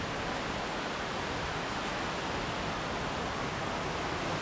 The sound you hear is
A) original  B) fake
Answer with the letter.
A